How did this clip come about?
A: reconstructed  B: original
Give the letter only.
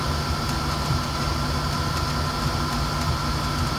B